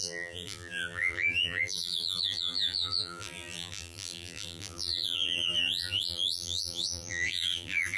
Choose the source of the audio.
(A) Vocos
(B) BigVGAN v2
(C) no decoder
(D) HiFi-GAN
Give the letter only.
B